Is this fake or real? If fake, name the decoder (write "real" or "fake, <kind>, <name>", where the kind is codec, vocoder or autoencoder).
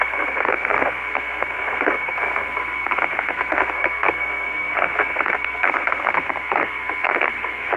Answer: fake, codec, SNAC